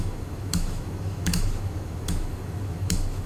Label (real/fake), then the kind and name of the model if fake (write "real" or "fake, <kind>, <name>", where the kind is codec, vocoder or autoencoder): fake, autoencoder, DAC-VAE